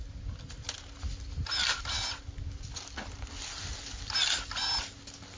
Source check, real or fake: real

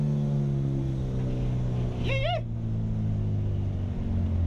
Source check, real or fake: real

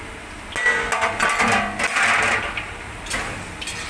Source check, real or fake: real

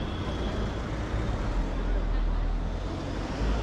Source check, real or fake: real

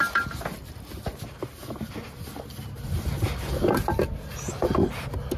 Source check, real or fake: real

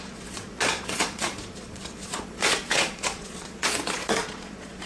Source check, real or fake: fake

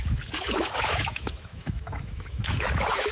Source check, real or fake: fake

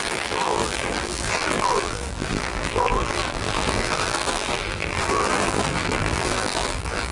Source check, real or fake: fake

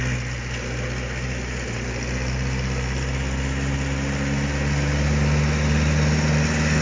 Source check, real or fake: real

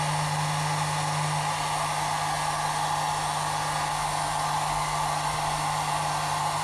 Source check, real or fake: real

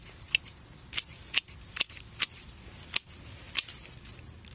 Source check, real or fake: real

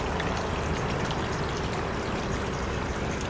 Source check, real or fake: real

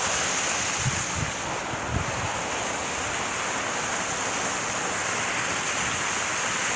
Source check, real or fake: real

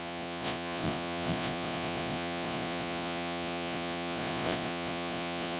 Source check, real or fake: fake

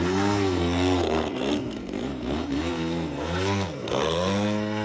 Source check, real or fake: fake